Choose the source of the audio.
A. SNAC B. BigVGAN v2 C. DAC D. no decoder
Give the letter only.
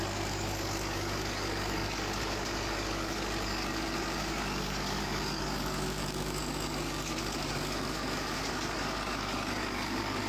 C